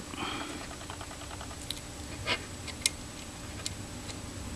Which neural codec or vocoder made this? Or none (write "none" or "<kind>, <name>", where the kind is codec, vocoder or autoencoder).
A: none